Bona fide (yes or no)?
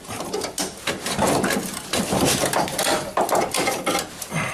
yes